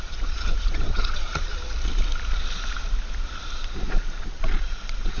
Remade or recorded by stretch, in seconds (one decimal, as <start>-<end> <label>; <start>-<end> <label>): 0.0-1.3 remade; 1.3-4.2 recorded; 4.2-5.2 remade